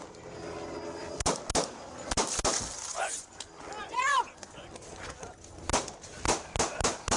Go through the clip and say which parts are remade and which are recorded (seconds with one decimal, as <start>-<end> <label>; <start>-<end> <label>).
0.0-2.9 recorded; 2.9-3.4 remade; 3.4-3.8 recorded; 3.8-4.7 remade; 4.7-7.2 recorded